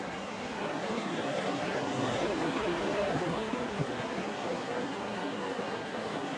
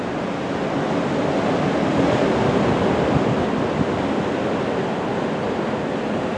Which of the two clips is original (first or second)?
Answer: second